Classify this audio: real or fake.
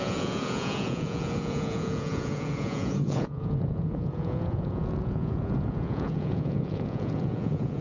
fake